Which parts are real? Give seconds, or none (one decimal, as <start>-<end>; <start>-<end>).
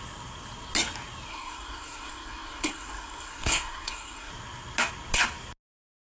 0.0-1.3; 4.3-6.2